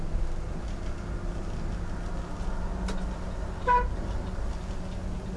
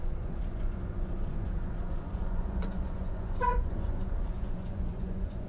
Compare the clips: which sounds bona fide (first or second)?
first